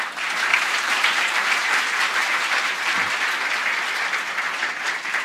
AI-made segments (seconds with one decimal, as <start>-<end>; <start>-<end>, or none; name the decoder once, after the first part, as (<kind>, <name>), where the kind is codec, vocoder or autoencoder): 0.5-3.6 (vocoder, BigVGAN v2)